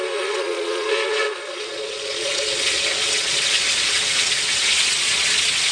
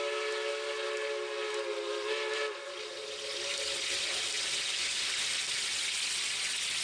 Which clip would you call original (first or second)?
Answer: second